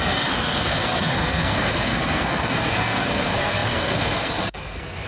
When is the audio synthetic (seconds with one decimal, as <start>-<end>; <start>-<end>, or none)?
0.0-5.1